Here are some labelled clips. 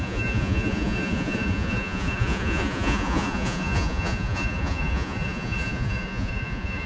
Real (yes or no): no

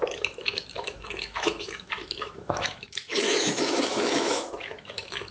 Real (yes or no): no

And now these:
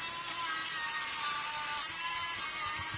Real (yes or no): yes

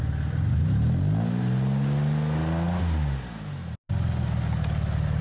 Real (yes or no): yes